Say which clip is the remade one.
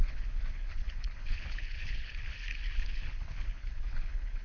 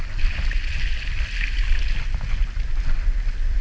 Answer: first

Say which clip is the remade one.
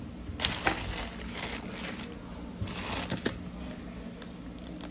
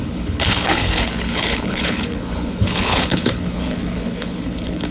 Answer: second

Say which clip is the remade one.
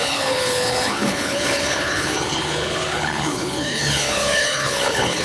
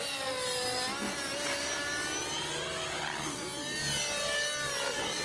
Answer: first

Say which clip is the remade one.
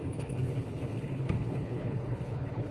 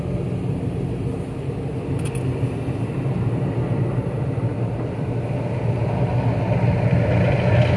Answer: first